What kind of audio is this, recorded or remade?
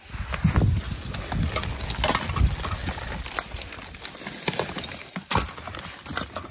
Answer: recorded